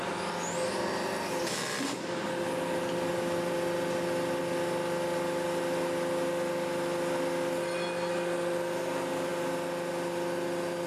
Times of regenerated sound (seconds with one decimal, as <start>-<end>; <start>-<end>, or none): none